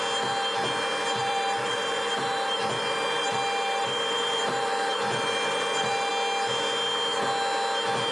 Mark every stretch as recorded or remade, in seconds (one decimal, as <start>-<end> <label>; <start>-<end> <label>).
0.0-1.2 recorded; 1.2-6.1 remade; 6.1-8.1 recorded